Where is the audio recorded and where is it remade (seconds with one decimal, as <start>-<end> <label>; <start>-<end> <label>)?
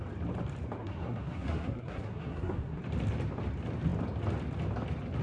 0.0-0.8 recorded; 0.8-2.8 remade; 2.8-5.2 recorded